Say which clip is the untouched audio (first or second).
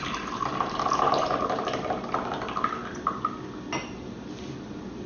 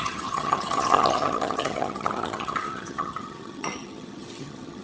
first